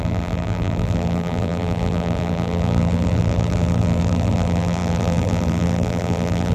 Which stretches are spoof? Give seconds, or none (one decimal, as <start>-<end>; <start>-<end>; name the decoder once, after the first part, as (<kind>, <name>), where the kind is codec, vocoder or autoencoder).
0.0-6.5 (vocoder, BigVGAN v2)